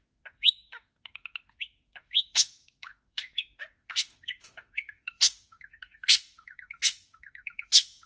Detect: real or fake fake